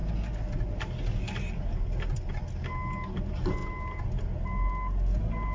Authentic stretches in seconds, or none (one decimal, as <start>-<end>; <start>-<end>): 0.0-5.5